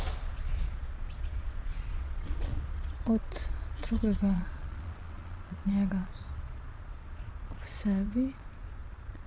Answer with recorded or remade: remade